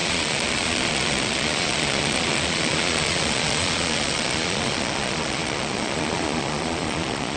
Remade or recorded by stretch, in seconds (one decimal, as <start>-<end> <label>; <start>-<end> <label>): 0.0-7.4 remade